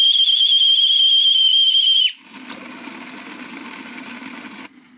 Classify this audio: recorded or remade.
recorded